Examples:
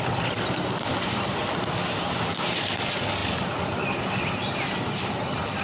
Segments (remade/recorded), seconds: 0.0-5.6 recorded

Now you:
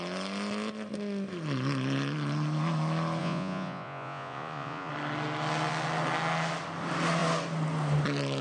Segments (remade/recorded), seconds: 0.0-3.2 recorded; 3.2-4.9 remade; 4.9-8.4 recorded